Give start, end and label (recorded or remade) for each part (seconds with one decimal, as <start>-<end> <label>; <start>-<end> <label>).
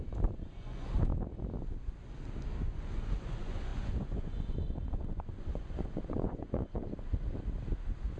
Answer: 0.0-1.1 remade; 1.1-2.7 recorded; 2.7-6.8 remade; 6.8-8.2 recorded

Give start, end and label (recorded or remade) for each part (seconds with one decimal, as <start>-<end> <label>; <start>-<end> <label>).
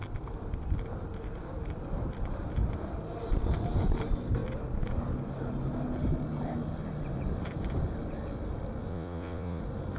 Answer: 0.0-8.9 recorded; 8.9-9.6 remade; 9.6-10.0 recorded